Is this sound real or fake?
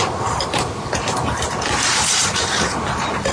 real